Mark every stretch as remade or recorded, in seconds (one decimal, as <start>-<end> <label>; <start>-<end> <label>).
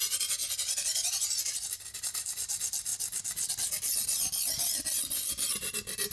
0.0-6.1 recorded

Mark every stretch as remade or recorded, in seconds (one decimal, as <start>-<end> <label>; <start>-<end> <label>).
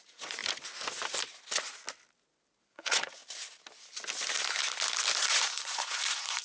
0.0-0.4 remade; 0.4-2.7 recorded; 2.7-3.2 remade; 3.2-5.2 recorded; 5.2-6.4 remade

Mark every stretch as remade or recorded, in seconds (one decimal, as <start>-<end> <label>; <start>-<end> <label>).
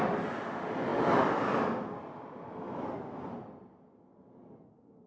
0.0-5.1 recorded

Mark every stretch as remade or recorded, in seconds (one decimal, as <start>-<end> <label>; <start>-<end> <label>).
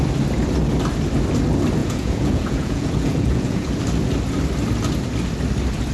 0.0-1.8 recorded; 1.8-3.7 remade; 3.7-5.9 recorded